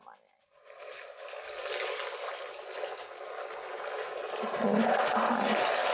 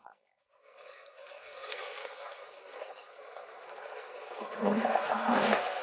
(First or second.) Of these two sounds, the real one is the first